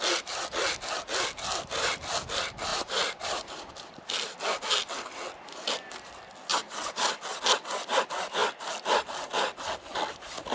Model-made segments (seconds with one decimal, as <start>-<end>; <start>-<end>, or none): 2.7-4.1; 6.5-7.4